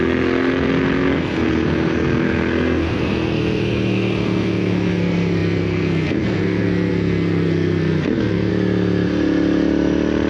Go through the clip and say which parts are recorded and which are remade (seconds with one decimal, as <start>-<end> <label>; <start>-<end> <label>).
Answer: 0.0-8.5 remade; 8.5-10.3 recorded